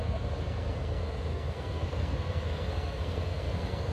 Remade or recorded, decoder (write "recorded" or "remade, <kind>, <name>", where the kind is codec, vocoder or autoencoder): remade, codec, SNAC